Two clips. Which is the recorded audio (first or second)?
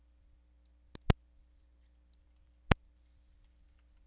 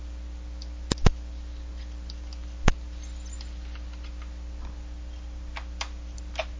second